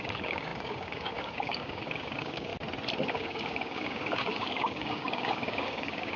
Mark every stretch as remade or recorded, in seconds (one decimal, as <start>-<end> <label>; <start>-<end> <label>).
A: 0.0-2.5 remade; 2.5-3.1 recorded; 3.1-6.2 remade